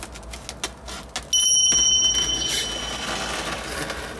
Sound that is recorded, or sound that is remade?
recorded